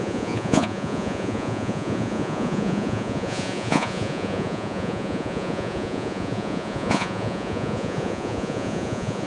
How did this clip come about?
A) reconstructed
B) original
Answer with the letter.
A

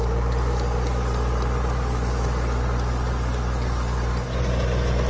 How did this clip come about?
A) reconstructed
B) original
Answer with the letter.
B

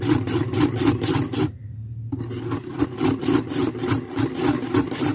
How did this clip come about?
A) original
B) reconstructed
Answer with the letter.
A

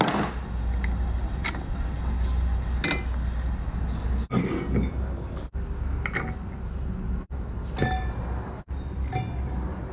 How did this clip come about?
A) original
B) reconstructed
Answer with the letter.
A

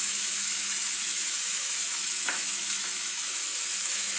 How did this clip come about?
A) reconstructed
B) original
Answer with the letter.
A